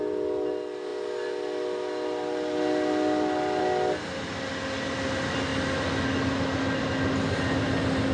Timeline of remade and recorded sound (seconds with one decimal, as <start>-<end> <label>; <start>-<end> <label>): 0.0-8.1 recorded